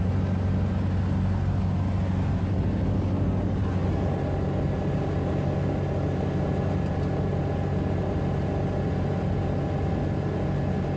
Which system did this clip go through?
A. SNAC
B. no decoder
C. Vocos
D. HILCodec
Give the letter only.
B